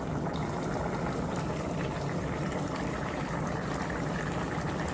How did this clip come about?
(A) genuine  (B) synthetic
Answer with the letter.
B